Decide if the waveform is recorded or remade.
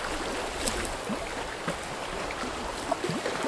recorded